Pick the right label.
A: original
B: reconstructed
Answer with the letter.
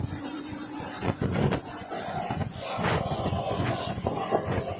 B